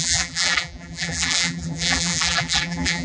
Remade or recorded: remade